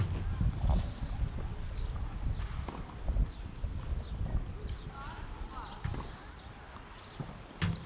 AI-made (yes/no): no